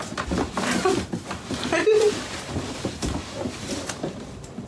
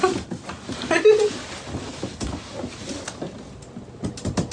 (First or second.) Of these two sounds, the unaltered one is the second